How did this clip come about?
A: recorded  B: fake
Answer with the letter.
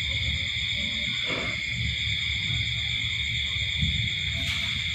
A